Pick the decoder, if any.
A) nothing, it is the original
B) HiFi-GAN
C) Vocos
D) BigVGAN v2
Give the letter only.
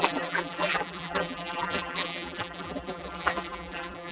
D